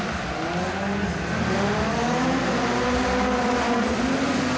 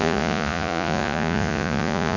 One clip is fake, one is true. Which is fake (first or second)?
second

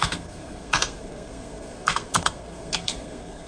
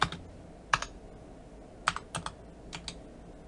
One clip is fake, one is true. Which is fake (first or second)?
first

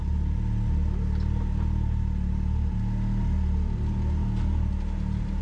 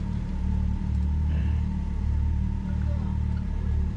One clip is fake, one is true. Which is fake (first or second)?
second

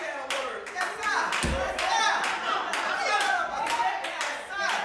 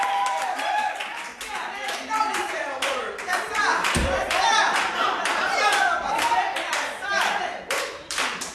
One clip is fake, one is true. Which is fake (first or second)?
second